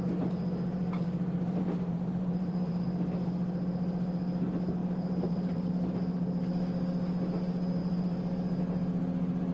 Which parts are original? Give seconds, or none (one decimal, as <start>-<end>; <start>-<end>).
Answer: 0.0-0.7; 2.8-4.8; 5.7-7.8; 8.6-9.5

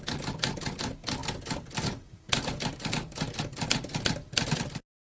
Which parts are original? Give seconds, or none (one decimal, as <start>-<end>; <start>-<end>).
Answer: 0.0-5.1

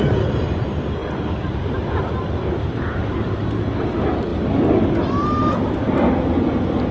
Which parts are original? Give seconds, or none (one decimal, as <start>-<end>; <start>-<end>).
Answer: 0.0-6.9

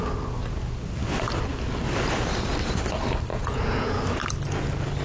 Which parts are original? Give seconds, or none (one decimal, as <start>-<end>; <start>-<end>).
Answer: 0.0-3.3; 4.0-5.0

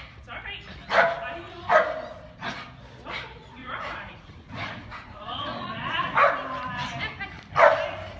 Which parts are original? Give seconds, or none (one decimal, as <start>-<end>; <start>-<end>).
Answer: 0.0-3.6; 6.0-8.2